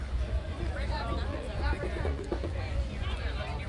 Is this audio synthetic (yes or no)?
yes